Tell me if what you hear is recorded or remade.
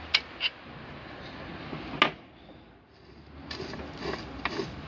recorded